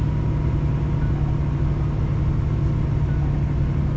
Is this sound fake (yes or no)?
no